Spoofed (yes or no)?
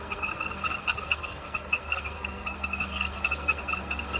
yes